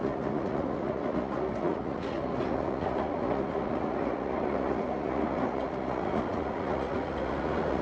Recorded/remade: remade